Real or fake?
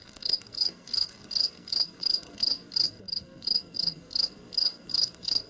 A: fake